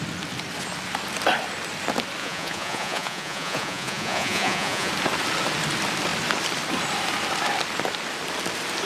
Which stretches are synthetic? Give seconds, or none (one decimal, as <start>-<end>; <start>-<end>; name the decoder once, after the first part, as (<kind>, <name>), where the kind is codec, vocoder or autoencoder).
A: 2.2-4.9 (vocoder, Vocos)